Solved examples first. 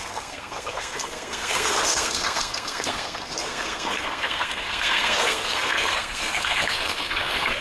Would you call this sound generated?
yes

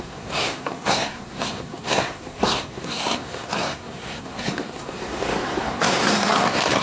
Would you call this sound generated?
yes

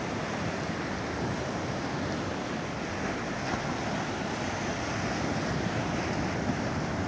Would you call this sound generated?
no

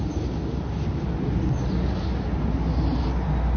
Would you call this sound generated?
no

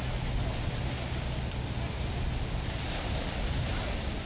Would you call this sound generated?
no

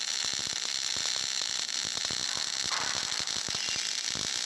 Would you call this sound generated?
no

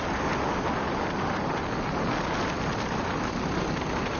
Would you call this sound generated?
no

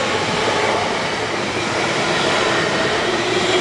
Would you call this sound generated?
no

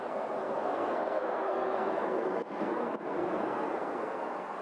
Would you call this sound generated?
yes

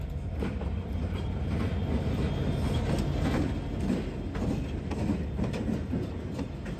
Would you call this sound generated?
no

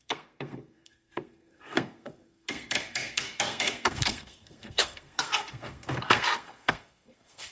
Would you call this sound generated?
yes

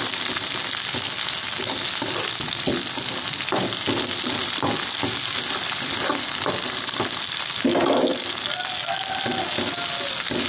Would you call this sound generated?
no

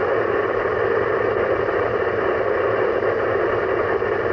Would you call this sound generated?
no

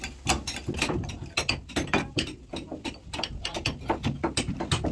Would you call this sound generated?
no